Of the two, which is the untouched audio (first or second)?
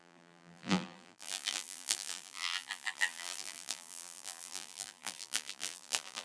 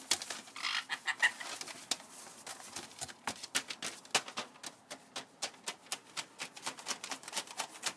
second